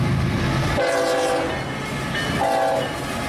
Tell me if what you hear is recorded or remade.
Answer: recorded